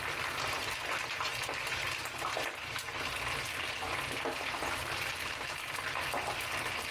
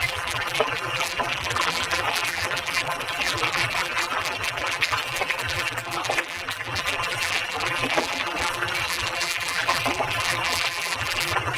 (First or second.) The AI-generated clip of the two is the second